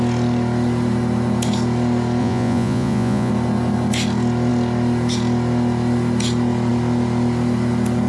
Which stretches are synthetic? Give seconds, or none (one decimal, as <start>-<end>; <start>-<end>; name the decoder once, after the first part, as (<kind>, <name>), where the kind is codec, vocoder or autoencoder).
2.2-3.3 (vocoder, Vocos)